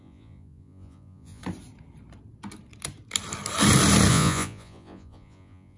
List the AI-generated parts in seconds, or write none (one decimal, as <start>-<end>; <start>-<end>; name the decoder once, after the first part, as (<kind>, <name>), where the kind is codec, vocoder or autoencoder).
0.0-1.4 (vocoder, Vocos); 4.1-5.8